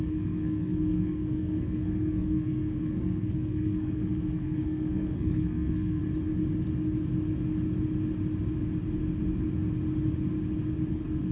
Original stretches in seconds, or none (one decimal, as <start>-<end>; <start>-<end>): 6.0-10.9